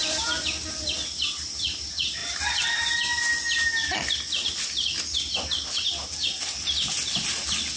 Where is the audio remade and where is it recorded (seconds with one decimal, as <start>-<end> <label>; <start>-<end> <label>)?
0.0-7.8 recorded